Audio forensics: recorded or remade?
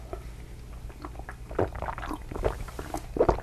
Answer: recorded